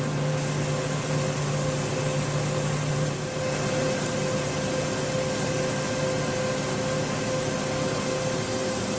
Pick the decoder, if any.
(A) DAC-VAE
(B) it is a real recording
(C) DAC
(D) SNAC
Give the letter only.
B